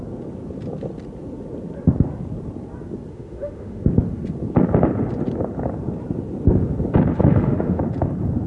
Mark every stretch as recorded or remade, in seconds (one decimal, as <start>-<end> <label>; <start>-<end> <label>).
0.0-3.1 recorded; 3.1-3.8 remade; 3.8-7.2 recorded; 7.2-7.8 remade; 7.8-8.5 recorded